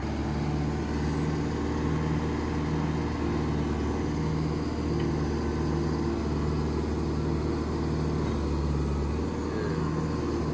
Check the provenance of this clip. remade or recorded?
recorded